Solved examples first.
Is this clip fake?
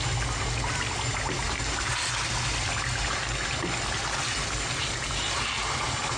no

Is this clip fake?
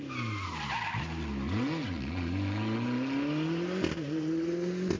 no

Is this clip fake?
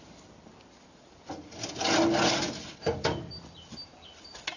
no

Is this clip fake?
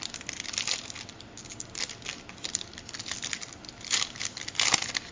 no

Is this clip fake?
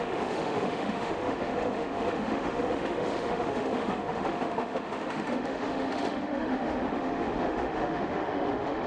yes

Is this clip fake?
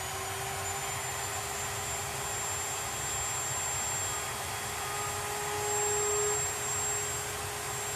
no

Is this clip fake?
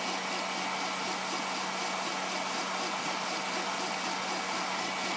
no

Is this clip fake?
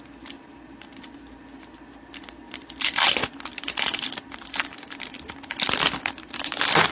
yes